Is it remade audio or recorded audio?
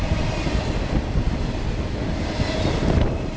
recorded